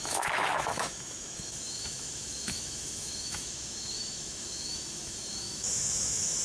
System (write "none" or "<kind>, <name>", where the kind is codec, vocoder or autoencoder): autoencoder, DAC-VAE